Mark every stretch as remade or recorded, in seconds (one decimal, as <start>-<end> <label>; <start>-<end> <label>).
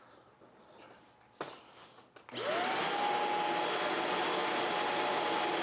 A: 0.0-5.6 recorded